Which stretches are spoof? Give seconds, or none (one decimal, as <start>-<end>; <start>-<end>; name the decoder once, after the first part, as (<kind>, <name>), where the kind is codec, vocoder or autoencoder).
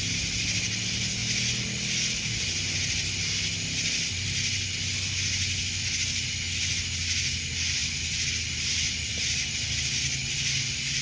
none